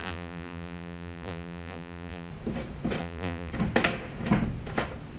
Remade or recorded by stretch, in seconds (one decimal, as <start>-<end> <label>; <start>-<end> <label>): 0.0-2.3 remade; 2.3-3.0 recorded; 3.0-3.5 remade; 3.5-5.2 recorded